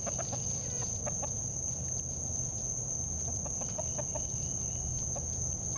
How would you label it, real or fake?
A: real